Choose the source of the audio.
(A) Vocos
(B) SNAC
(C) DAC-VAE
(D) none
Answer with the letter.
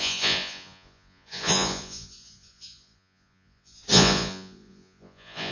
A